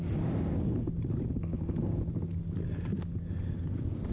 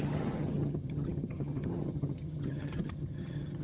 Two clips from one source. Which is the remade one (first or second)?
second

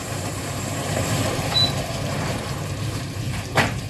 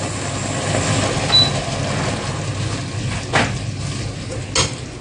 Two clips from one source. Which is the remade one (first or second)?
first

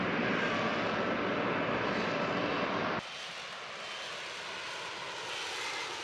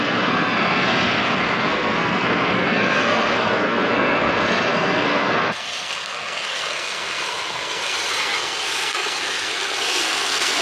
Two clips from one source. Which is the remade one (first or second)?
second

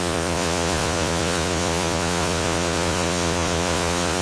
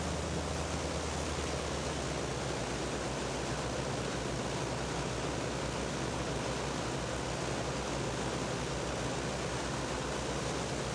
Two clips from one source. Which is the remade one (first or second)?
first